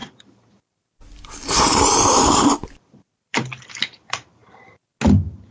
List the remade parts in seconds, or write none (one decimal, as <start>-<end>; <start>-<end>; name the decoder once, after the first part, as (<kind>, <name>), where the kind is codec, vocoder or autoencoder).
0.0-4.4 (vocoder, BigVGAN v2)